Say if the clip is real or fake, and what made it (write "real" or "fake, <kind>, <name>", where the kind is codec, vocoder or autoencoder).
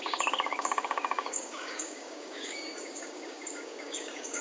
fake, codec, DAC